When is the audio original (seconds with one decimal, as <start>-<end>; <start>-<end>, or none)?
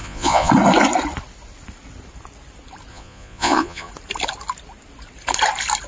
0.5-2.9; 3.9-5.9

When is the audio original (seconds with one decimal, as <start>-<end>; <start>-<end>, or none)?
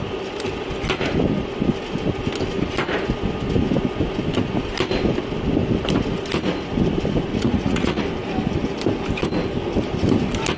0.0-7.3; 8.0-10.6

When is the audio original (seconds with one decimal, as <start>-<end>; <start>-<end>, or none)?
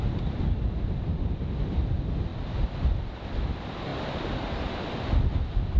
0.0-5.8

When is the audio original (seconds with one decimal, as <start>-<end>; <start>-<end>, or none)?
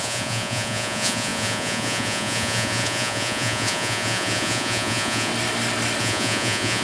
5.3-6.0